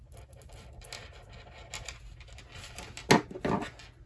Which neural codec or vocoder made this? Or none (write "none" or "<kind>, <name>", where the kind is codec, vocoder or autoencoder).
none